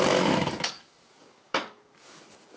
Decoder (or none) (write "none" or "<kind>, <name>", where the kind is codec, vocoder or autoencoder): codec, DAC